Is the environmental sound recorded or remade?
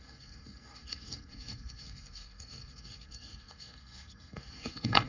remade